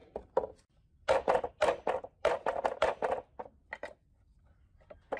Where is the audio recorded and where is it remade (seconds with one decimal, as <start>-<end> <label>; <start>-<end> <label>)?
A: 0.0-5.2 recorded